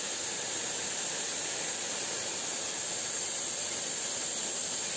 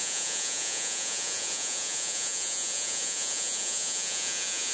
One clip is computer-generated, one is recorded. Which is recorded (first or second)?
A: first